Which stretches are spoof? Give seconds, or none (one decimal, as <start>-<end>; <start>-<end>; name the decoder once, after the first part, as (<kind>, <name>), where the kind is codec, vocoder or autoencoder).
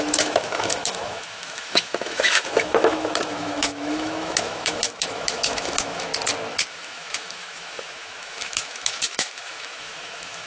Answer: 0.0-6.1 (autoencoder, DAC-VAE); 6.7-10.5